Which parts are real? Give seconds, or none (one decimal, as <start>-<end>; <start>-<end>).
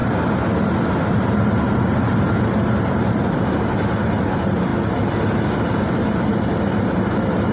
0.0-7.5